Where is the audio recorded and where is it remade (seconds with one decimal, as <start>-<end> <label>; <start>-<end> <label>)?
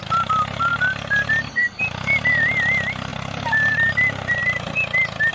0.0-0.7 remade; 0.7-1.5 recorded; 1.5-3.1 remade; 3.1-3.7 recorded; 3.7-4.4 remade; 4.4-5.3 recorded